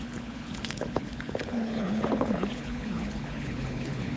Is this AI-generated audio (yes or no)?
yes